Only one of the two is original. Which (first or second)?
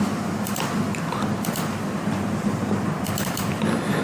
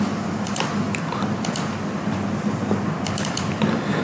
second